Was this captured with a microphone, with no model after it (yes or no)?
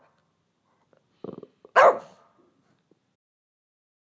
yes